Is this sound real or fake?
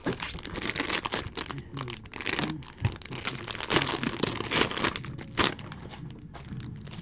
real